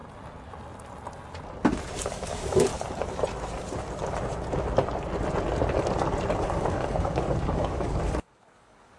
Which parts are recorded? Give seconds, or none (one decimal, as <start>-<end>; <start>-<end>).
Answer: 0.0-2.0; 2.7-6.4